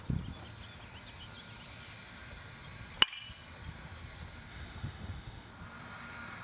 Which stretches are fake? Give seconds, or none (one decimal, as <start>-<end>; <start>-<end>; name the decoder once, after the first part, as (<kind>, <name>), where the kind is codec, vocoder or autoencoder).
4.5-5.5 (autoencoder, DAC-VAE)